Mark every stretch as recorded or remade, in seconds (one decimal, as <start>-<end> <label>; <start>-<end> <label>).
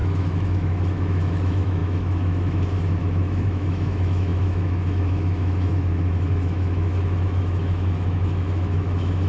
0.0-9.3 remade